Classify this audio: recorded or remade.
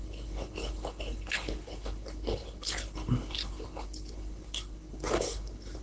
remade